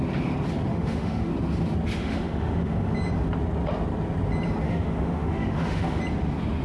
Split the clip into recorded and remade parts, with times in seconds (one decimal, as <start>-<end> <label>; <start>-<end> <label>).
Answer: 0.0-0.7 recorded; 0.7-1.3 remade; 1.3-2.0 recorded; 2.0-2.9 remade; 2.9-4.6 recorded; 4.6-6.0 remade; 6.0-6.6 recorded

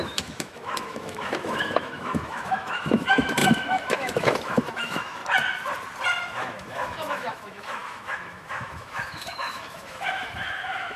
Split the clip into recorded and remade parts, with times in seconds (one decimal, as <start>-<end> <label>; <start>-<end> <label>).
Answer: 0.0-5.2 remade; 5.2-6.2 recorded; 6.2-11.0 remade

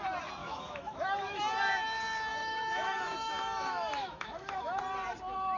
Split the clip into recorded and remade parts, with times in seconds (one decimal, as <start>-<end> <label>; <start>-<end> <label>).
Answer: 0.0-0.4 recorded; 0.4-1.4 remade; 1.4-2.3 recorded; 2.3-4.8 remade; 4.8-5.6 recorded

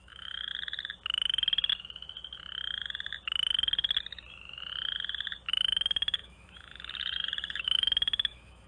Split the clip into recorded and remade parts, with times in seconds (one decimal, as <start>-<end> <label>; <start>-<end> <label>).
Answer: 0.0-0.5 remade; 0.5-5.5 recorded; 5.5-8.7 remade

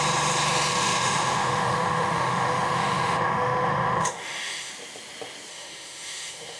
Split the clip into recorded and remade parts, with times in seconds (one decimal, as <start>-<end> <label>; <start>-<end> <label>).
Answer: 0.0-0.7 recorded; 0.7-4.7 remade; 4.7-5.5 recorded; 5.5-6.6 remade